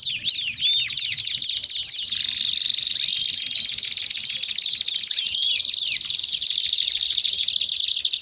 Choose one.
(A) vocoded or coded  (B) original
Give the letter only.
B